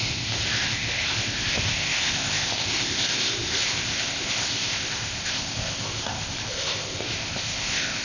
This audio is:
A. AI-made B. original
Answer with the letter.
A